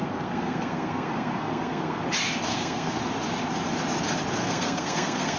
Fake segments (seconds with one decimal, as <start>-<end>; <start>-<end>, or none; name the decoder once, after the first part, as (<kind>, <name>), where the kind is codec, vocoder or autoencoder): 0.0-2.0 (codec, SNAC); 2.5-3.0; 4.4-5.4